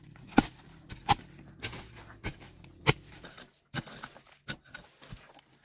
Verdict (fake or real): real